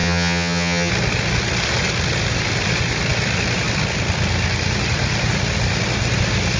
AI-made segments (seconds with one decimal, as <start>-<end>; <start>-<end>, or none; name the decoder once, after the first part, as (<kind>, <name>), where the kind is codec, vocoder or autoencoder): 0.0-0.9 (vocoder, HiFi-GAN)